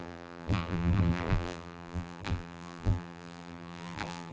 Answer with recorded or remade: remade